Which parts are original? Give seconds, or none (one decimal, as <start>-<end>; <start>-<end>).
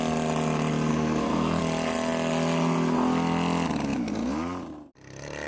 0.0-0.9; 1.6-5.5